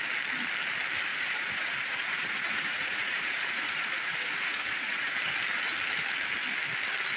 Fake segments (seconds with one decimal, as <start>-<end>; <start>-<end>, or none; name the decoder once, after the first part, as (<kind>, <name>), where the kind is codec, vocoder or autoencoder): 1.1-5.2 (vocoder, Vocos)

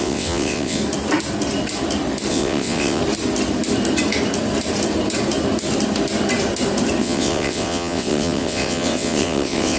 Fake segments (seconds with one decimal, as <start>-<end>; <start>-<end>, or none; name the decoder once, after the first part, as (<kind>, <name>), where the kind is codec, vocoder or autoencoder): 0.0-0.8 (vocoder, WaveNeXt); 2.3-3.0; 7.0-9.8

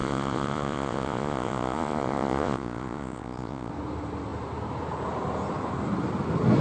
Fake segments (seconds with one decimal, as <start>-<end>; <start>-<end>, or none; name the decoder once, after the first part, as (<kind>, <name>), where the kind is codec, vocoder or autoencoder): 0.0-3.7 (vocoder, Vocos)

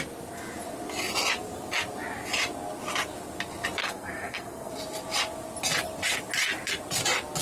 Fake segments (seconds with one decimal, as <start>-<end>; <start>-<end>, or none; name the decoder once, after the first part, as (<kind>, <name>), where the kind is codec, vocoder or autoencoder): 3.8-4.7 (codec, SNAC)

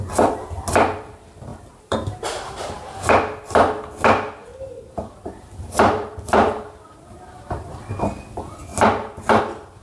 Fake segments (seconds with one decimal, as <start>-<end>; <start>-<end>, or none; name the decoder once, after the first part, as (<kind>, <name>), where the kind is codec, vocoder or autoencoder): 1.5-2.9 (vocoder, BigVGAN v2); 4.5-7.9; 8.7-9.4